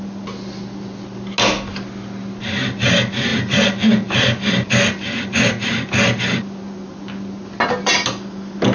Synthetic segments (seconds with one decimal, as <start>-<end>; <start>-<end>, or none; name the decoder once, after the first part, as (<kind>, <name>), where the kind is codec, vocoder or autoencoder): none

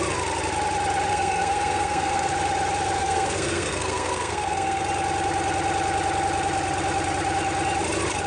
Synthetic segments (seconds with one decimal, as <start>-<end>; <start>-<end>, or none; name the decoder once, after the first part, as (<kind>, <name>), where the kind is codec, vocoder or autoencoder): 1.1-2.3 (codec, SNAC); 3.0-4.8

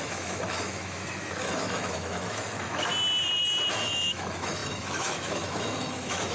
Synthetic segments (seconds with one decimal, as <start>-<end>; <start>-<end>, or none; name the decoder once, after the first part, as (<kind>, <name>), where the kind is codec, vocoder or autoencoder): 0.0-2.9 (autoencoder, DAC-VAE); 3.7-6.3